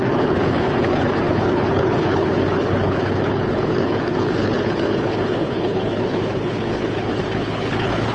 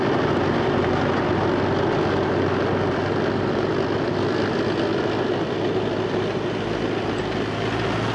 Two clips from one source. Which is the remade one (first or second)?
first